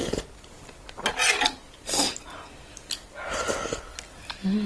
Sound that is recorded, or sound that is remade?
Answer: recorded